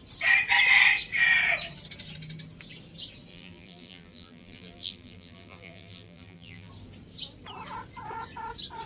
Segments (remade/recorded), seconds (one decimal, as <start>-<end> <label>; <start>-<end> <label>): 0.0-3.3 recorded; 3.3-6.7 remade; 6.7-8.9 recorded